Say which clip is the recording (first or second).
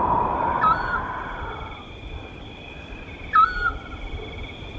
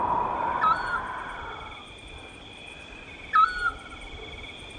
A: second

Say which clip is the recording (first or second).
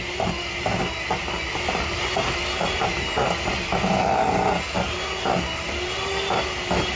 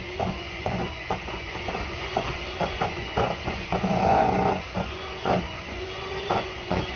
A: first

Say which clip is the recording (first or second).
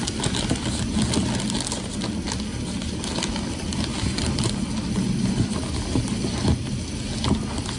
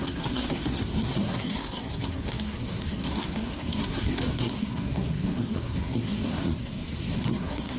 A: first